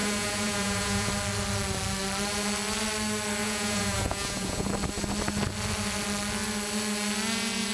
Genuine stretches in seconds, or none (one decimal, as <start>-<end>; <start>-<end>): 1.1-3.4; 4.7-7.7